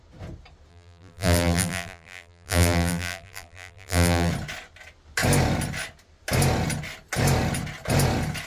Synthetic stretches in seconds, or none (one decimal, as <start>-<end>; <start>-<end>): 0.7-4.3